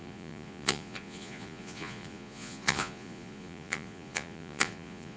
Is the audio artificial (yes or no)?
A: yes